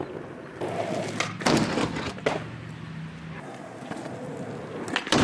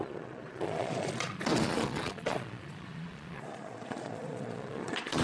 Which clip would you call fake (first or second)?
second